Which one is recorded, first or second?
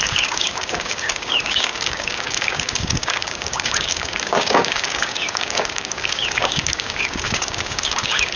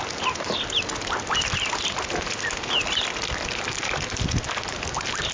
second